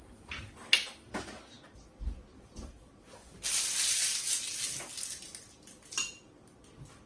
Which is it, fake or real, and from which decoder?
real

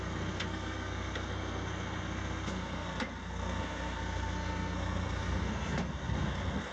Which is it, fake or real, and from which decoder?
fake, codec, SNAC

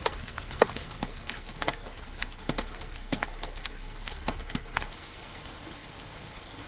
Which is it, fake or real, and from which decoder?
fake, codec, SNAC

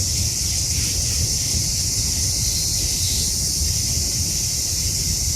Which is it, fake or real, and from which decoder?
real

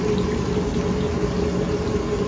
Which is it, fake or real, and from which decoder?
real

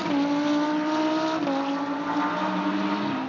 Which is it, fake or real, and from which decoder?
real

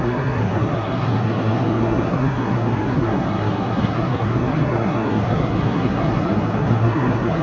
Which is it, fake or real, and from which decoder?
fake, codec, SNAC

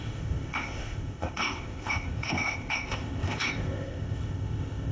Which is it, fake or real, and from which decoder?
fake, codec, ZipCodec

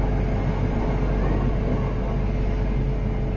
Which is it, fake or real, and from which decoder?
real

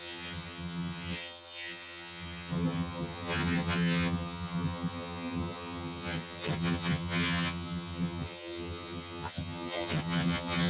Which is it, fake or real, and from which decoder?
fake, vocoder, HiFi-GAN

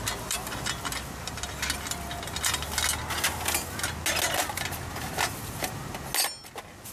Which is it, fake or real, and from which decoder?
real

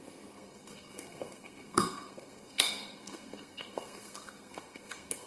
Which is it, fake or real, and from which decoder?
fake, codec, SNAC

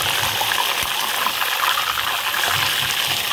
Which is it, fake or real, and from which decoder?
real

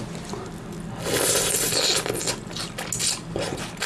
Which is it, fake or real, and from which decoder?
real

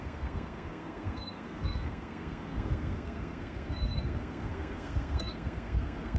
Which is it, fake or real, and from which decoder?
fake, codec, SNAC